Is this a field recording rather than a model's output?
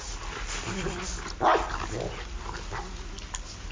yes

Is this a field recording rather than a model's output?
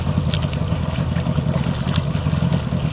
yes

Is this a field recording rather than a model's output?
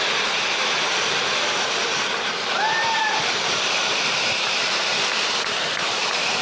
no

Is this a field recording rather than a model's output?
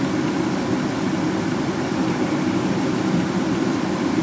yes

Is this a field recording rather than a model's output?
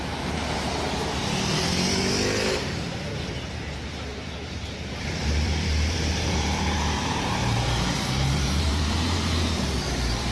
no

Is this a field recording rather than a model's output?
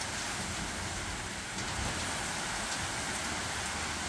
yes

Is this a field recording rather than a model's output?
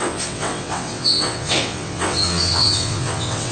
no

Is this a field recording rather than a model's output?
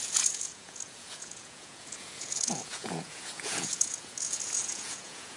no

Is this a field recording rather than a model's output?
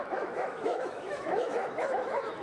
no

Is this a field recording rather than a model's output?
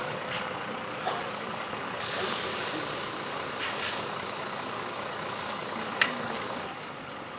no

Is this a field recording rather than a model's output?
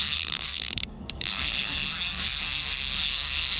no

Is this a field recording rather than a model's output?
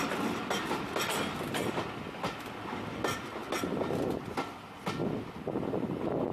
yes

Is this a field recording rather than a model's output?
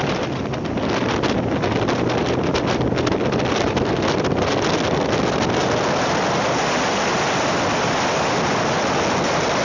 yes